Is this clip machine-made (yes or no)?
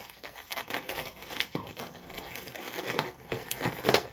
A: yes